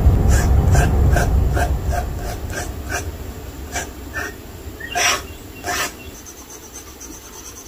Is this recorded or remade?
recorded